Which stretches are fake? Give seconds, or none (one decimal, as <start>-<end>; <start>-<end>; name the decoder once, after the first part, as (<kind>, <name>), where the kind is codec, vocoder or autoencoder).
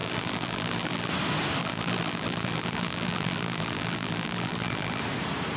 0.0-1.1 (vocoder, BigVGAN v2); 1.6-5.0